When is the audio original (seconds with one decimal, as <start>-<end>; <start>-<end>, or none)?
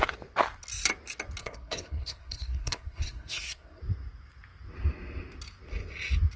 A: 0.0-1.4; 3.8-6.4